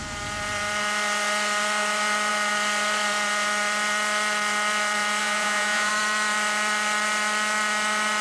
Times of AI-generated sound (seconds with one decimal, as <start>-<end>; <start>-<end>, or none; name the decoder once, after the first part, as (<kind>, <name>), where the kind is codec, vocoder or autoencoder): 5.2-5.9 (vocoder, Vocos)